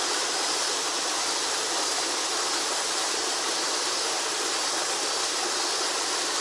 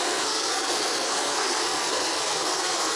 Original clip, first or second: first